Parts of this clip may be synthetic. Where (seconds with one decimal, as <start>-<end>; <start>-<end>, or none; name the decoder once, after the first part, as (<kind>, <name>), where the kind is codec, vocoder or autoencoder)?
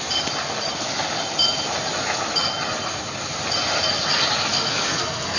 4.5-5.4 (codec, SNAC)